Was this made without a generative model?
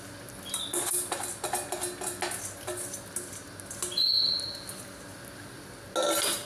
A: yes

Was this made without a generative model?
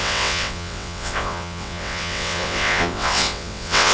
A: no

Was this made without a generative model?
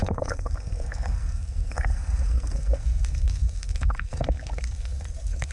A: no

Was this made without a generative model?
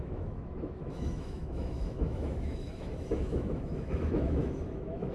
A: no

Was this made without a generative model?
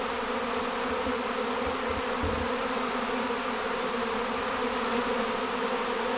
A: yes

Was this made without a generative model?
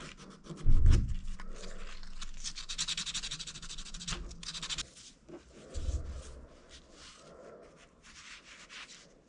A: yes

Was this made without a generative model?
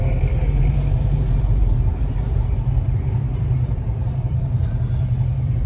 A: no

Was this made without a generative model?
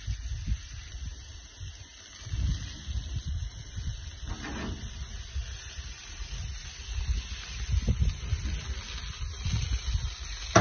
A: yes